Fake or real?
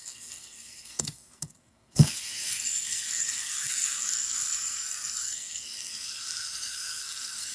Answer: fake